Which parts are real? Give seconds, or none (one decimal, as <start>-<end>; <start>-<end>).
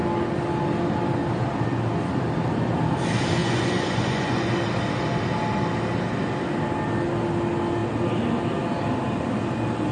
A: 0.0-3.4; 4.5-9.9